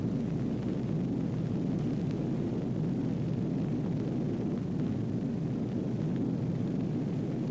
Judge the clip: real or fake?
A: real